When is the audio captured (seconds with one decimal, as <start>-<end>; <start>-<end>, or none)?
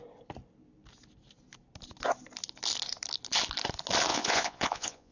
0.0-4.1